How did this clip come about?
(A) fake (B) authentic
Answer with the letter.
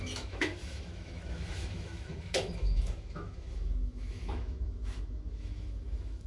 A